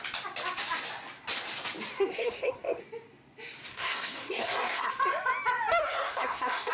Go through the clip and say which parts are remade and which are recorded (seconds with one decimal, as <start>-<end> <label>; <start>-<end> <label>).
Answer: 0.0-2.1 recorded; 2.1-2.8 remade; 2.8-3.7 recorded; 3.7-4.9 remade; 4.9-5.8 recorded; 5.8-6.7 remade